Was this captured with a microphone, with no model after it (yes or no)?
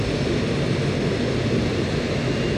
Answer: yes